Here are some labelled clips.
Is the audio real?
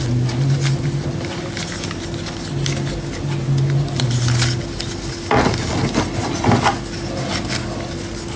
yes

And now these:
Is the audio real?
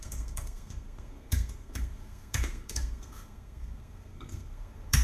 no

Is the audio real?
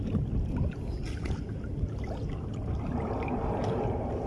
yes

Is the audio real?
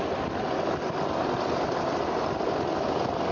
yes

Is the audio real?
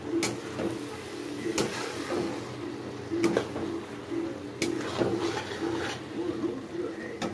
yes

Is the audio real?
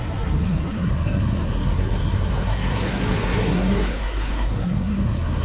no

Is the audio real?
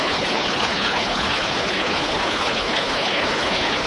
no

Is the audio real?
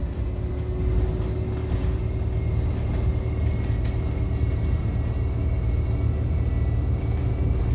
yes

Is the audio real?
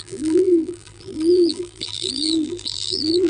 no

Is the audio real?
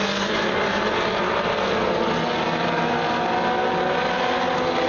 yes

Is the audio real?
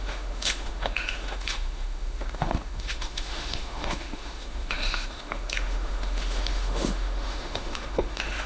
no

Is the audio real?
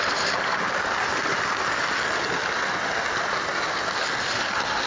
yes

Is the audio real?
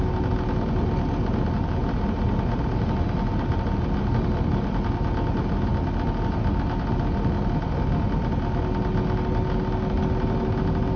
yes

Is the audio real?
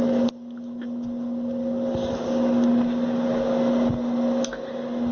yes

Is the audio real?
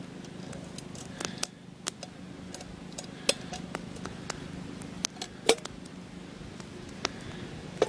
yes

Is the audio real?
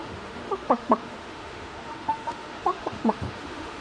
no